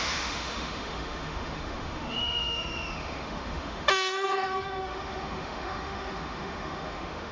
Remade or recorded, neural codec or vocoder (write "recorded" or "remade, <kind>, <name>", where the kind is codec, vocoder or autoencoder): remade, autoencoder, DAC-VAE